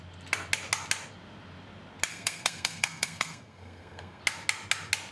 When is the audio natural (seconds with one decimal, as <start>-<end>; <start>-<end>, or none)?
0.0-2.1; 4.2-5.1